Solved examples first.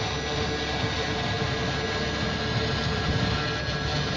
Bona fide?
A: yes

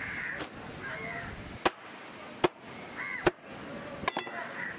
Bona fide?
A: yes